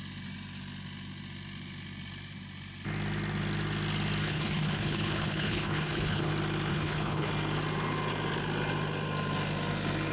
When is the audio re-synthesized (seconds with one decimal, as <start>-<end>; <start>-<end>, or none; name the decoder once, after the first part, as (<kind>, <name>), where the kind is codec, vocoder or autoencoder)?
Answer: 4.2-6.3 (codec, HILCodec); 6.7-7.3